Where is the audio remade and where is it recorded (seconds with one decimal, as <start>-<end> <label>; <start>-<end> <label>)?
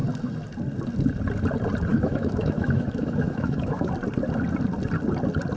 0.0-1.9 recorded; 1.9-3.9 remade; 3.9-5.6 recorded